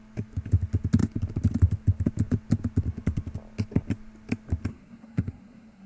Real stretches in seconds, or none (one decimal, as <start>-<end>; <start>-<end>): 0.0-4.7